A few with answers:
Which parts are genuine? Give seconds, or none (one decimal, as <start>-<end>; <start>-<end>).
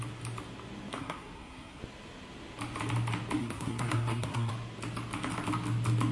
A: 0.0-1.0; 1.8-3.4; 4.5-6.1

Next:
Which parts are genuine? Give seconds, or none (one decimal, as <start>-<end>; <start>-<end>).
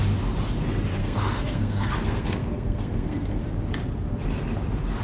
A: 0.0-1.0; 3.4-5.0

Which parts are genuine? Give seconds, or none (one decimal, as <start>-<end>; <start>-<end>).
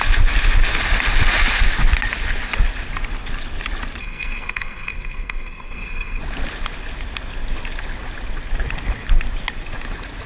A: 0.0-4.0; 6.2-10.3